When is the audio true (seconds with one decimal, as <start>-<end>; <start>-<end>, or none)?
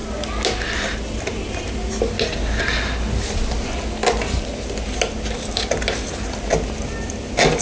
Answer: 0.0-7.6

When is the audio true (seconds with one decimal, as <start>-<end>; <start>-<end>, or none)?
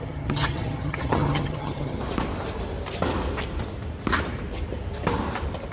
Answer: 2.0-5.7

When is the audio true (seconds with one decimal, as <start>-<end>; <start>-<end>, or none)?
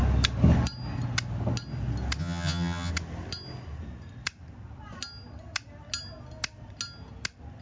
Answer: 0.0-2.2; 2.9-7.6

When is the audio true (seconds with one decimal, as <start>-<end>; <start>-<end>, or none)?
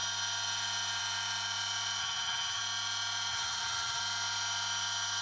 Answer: 0.0-2.0; 2.6-3.3; 4.0-5.2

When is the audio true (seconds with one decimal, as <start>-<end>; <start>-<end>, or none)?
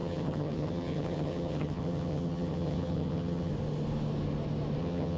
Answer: 3.5-4.8